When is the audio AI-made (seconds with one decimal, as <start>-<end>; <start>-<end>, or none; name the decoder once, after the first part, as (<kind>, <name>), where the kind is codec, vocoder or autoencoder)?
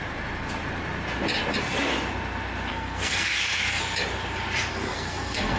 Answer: 2.7-3.8 (codec, SNAC); 4.7-5.6